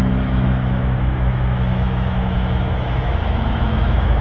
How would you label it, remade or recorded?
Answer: remade